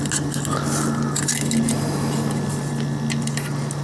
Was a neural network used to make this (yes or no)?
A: no